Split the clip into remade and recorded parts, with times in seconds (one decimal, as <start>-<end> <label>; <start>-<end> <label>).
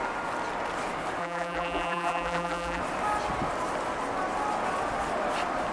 0.0-1.2 recorded; 1.2-2.8 remade; 2.8-5.7 recorded